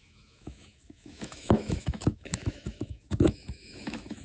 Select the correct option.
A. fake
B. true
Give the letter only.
A